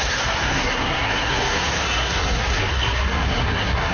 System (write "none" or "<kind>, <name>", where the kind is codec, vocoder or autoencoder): codec, SNAC